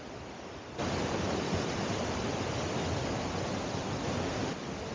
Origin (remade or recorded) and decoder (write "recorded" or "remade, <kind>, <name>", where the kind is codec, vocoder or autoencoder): recorded